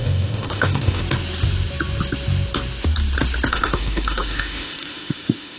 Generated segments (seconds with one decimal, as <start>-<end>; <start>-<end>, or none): 0.0-1.0; 3.5-5.6